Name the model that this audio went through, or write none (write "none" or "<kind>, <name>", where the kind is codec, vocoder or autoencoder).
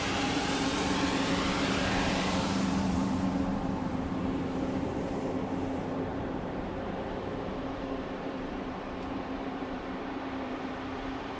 vocoder, BigVGAN v2